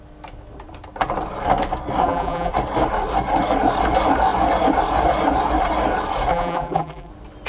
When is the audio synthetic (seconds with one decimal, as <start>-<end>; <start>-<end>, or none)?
2.0-2.5; 6.3-7.1